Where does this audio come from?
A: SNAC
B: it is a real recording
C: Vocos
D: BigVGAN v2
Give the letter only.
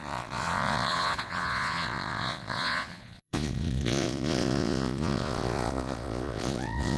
C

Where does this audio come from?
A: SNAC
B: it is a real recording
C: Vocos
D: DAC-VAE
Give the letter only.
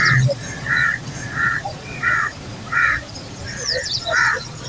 C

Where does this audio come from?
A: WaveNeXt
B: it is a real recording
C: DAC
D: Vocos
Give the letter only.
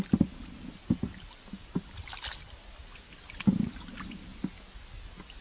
B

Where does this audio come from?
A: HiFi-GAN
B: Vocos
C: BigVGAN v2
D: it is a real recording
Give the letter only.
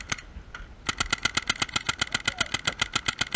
D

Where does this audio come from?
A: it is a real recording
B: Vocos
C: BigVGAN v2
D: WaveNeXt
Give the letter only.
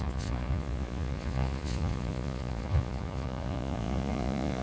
B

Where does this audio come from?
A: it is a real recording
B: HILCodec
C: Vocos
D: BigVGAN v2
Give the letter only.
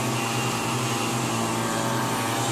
A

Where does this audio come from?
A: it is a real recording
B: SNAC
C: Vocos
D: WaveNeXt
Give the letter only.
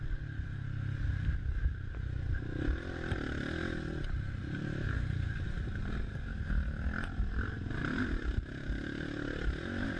A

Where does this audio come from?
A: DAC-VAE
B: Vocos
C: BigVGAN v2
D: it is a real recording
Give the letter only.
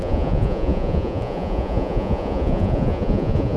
B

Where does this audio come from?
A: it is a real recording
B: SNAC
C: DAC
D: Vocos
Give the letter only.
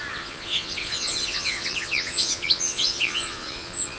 D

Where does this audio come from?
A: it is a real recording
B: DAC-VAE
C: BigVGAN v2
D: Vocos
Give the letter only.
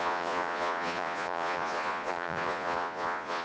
D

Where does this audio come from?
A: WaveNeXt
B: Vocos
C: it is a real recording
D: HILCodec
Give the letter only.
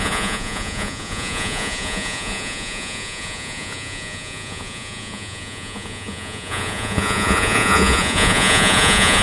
B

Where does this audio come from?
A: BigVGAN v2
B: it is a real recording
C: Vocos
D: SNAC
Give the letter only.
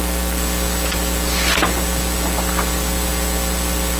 B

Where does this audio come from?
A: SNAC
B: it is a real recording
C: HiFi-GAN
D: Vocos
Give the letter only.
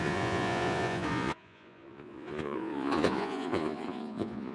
D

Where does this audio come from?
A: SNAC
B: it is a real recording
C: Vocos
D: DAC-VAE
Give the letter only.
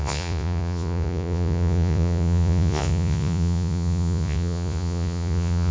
C